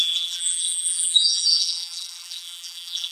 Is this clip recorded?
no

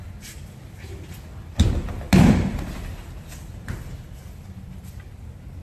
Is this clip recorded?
yes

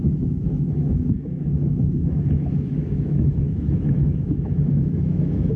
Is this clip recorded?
no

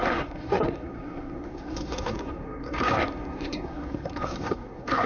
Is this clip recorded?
no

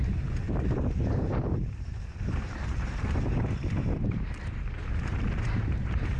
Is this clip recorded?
no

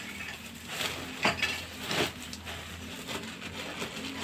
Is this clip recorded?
yes